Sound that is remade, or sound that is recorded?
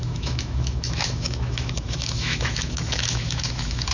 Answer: remade